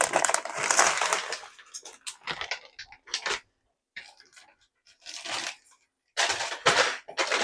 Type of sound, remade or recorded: recorded